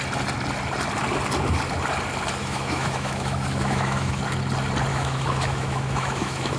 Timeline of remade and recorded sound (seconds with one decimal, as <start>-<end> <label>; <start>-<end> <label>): 0.0-2.4 recorded; 2.4-4.2 remade; 4.2-4.9 recorded; 4.9-6.6 remade